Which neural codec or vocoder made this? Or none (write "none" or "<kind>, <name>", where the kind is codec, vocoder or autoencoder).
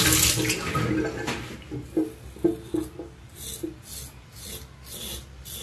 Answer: none